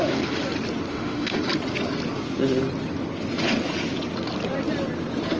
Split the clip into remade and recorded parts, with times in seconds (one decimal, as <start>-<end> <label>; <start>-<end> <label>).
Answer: 0.0-0.9 recorded; 0.9-1.4 remade; 1.4-5.4 recorded